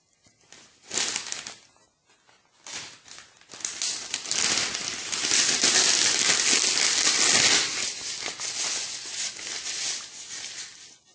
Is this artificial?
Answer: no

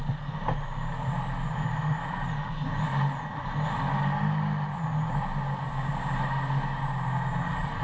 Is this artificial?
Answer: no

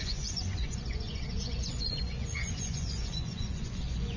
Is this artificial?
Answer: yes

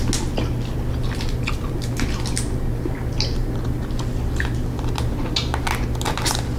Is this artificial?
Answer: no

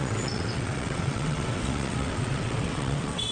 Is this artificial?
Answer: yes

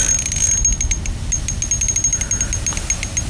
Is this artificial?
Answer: no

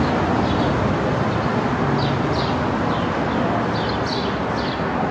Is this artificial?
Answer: no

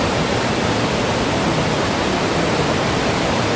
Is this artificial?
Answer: no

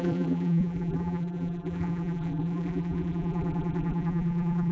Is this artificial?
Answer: yes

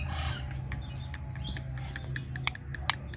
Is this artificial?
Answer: no